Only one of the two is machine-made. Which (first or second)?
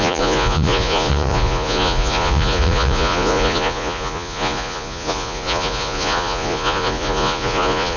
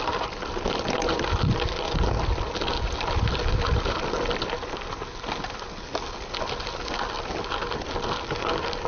first